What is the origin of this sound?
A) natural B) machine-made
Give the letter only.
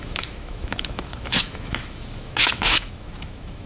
B